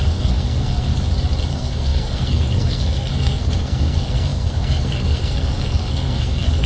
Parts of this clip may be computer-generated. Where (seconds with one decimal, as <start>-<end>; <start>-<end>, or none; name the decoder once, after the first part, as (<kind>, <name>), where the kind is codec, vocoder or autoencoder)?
0.0-0.9 (codec, SNAC); 1.5-6.7